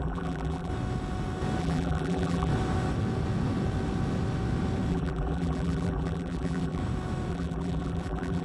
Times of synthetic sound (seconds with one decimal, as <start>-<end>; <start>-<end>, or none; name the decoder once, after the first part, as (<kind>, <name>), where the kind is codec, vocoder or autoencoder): 0.0-0.7 (vocoder, BigVGAN v2); 1.6-2.5; 4.9-6.8; 7.3-8.4